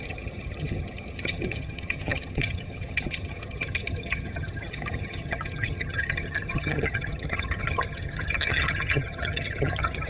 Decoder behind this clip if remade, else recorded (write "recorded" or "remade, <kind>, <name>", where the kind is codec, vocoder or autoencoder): remade, vocoder, HiFi-GAN